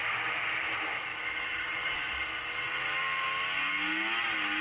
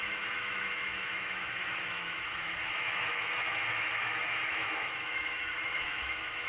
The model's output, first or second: second